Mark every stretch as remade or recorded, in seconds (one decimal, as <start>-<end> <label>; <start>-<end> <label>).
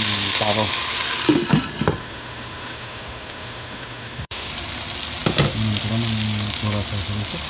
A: 0.0-2.0 recorded; 2.0-4.5 remade; 4.5-7.5 recorded